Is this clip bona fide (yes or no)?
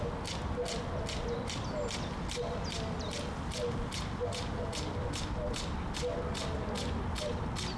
yes